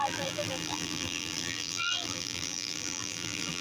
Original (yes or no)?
no